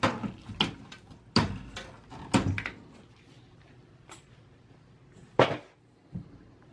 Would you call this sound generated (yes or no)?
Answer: no